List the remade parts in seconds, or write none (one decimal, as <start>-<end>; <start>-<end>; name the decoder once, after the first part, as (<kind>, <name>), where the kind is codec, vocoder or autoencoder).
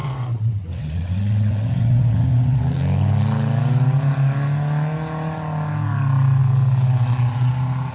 0.0-2.6 (vocoder, WaveNeXt)